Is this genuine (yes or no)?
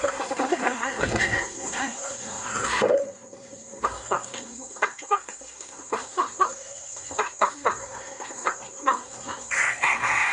no